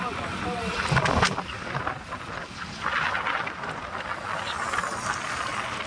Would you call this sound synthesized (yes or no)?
no